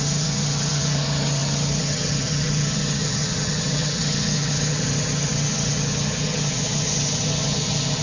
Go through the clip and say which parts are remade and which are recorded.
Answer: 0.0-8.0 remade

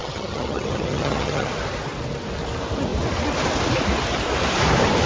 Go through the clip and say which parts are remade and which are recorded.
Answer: 0.0-1.5 remade; 1.5-5.1 recorded

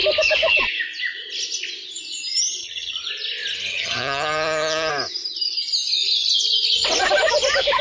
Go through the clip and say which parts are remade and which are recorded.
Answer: 0.0-2.6 recorded; 2.6-3.1 remade; 3.1-3.7 recorded; 3.7-4.9 remade; 4.9-7.8 recorded

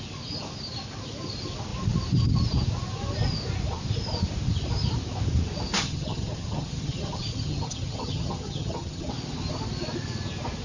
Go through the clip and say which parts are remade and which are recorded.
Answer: 0.0-5.8 recorded; 5.8-9.1 remade; 9.1-10.6 recorded

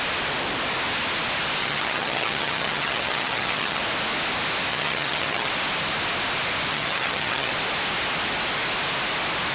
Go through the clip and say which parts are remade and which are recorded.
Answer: 0.0-1.6 recorded; 1.6-3.8 remade; 3.8-4.7 recorded; 4.7-5.5 remade; 5.5-6.7 recorded; 6.7-7.5 remade; 7.5-9.5 recorded